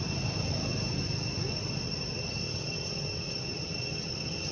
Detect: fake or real real